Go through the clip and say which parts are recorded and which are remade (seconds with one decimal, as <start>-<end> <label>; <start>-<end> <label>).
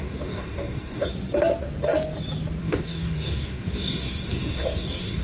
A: 0.0-1.1 remade; 1.1-2.6 recorded; 2.6-5.2 remade